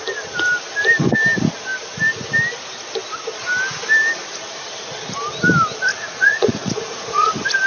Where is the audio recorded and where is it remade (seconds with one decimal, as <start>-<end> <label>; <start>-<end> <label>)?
0.0-5.9 recorded; 5.9-7.3 remade; 7.3-7.7 recorded